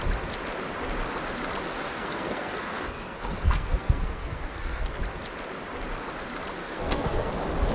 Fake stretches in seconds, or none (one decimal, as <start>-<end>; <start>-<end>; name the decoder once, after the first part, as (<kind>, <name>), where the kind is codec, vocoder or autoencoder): 1.7-5.0 (codec, SNAC); 6.6-7.3